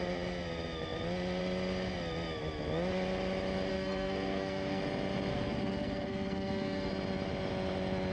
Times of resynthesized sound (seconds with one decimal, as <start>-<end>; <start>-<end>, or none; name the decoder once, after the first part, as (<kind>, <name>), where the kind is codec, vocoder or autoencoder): 3.7-4.8 (codec, SNAC); 5.3-6.9